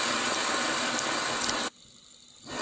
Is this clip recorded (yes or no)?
yes